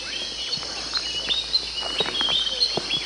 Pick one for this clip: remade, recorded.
recorded